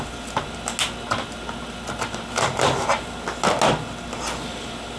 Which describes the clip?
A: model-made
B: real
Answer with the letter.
B